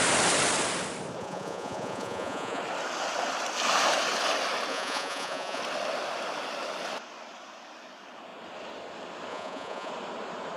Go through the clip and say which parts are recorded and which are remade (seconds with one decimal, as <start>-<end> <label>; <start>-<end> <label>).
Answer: 0.0-1.2 recorded; 1.2-2.6 remade; 2.6-4.7 recorded; 4.7-5.6 remade; 5.6-9.3 recorded; 9.3-9.9 remade; 9.9-10.6 recorded